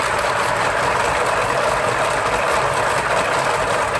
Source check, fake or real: real